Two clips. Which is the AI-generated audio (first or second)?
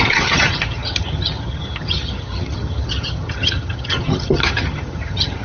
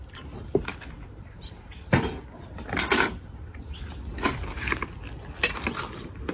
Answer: first